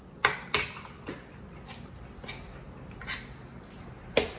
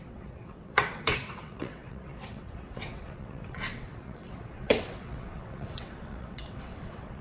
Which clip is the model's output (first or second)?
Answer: second